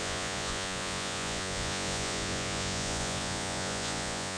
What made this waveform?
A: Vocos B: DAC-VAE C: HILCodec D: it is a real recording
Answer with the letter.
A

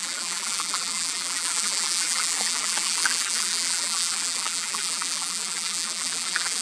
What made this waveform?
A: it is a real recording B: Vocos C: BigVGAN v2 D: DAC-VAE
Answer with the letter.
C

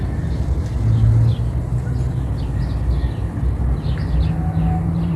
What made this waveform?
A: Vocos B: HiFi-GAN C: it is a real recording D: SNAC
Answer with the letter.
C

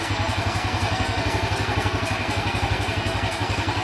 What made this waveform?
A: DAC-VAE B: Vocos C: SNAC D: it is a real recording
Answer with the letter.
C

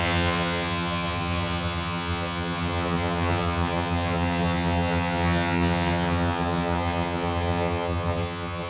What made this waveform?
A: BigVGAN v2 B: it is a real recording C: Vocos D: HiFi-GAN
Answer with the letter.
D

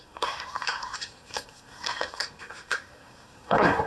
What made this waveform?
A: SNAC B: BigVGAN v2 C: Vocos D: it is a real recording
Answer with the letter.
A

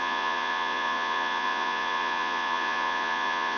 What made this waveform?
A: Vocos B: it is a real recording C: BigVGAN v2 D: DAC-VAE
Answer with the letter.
A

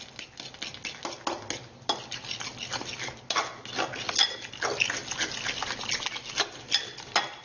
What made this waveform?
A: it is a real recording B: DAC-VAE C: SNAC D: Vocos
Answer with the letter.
A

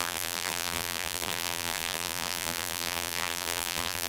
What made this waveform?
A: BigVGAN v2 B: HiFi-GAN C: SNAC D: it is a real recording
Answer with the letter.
A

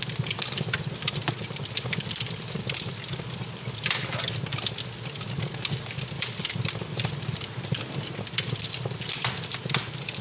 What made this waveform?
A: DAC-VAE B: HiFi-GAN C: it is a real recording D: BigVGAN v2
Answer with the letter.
C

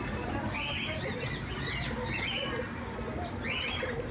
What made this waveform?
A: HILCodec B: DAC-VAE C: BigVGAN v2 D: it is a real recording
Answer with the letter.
D